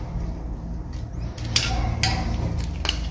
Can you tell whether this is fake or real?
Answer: real